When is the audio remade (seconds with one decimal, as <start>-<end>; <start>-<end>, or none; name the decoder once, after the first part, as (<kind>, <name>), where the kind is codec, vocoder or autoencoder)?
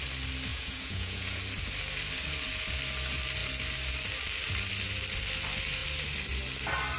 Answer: 0.5-1.4 (vocoder, Vocos)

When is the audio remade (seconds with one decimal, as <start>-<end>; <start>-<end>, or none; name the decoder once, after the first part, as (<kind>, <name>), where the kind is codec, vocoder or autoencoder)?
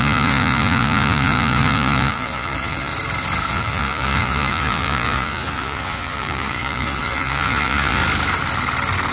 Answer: 0.0-2.9 (vocoder, Vocos); 3.5-8.0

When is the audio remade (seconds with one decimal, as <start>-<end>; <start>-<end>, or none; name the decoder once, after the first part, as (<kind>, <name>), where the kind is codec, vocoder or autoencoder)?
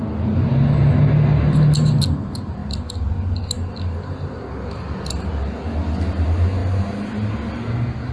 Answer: none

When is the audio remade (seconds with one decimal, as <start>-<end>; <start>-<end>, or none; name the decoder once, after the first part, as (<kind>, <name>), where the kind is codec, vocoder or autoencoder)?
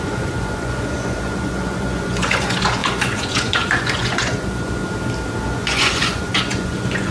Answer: 0.0-4.8 (vocoder, Vocos); 5.4-7.1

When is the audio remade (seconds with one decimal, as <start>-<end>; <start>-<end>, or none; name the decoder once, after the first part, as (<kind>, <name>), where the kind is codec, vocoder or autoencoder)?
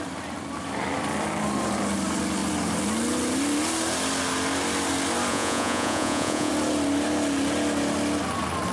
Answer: 5.3-6.5 (vocoder, Vocos)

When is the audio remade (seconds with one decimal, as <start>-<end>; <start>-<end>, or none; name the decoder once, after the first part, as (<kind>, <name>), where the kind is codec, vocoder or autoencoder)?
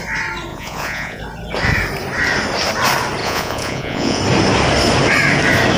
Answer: 0.5-1.2 (vocoder, Vocos); 3.2-4.2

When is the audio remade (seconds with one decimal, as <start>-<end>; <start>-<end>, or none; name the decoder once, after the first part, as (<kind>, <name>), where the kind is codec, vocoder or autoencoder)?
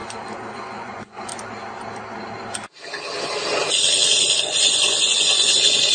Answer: 0.5-1.3 (vocoder, Vocos); 4.4-5.9